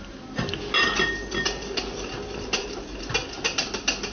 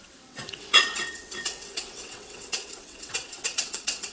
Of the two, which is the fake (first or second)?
second